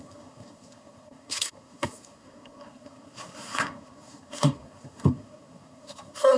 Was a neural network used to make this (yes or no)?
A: yes